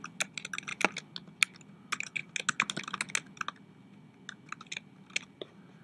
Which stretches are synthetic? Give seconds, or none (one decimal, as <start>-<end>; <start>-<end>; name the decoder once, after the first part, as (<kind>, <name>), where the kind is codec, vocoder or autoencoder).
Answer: none